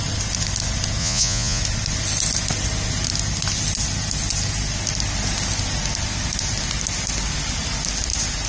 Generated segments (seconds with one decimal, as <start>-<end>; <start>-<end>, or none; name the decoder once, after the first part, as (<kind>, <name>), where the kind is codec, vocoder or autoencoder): 1.0-1.6 (vocoder, Vocos)

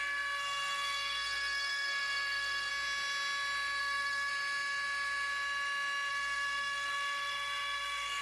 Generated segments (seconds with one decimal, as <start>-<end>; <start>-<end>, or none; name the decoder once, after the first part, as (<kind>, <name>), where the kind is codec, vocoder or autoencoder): 0.0-2.7 (codec, SNAC); 3.8-4.3; 6.1-8.2

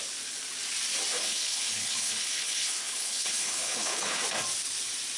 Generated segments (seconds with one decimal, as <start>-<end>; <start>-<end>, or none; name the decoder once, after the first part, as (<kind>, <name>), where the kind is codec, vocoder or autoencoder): 1.1-4.2 (codec, HILCodec)